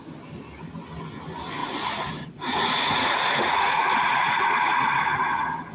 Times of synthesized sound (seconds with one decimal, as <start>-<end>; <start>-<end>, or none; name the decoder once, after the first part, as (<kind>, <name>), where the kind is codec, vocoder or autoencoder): 1.6-5.0 (vocoder, Vocos)